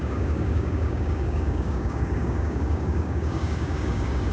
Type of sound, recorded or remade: remade